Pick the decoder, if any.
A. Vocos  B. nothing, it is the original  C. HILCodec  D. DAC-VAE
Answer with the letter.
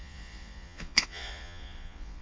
A